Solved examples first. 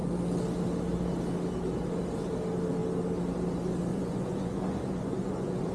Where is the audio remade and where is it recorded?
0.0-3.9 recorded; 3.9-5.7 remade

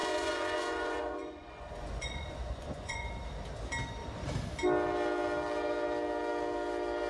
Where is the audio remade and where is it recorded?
0.0-3.1 remade; 3.1-7.1 recorded